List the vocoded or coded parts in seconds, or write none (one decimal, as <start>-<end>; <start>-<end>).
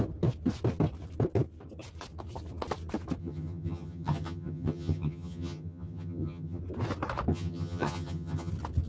3.2-6.6; 7.3-8.5